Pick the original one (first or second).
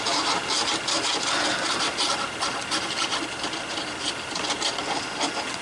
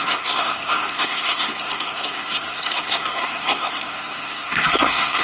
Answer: first